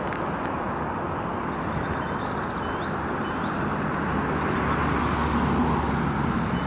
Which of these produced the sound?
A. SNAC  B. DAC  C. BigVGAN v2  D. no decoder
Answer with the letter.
D